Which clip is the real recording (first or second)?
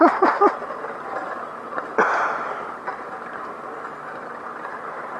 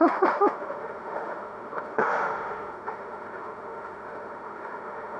first